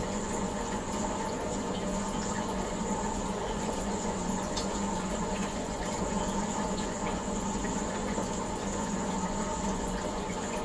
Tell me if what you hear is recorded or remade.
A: remade